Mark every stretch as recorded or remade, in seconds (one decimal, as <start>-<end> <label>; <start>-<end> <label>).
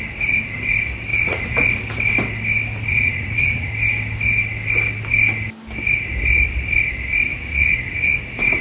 0.0-1.1 recorded; 1.1-1.8 remade; 1.8-2.9 recorded; 2.9-3.7 remade; 3.7-7.3 recorded; 7.3-8.2 remade; 8.2-8.6 recorded